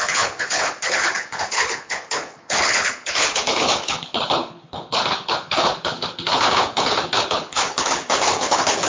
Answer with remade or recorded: remade